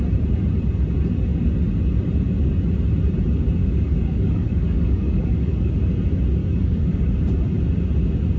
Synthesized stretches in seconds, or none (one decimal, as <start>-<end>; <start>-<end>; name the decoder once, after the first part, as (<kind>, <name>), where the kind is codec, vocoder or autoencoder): 3.6-5.7 (codec, DAC); 6.4-7.1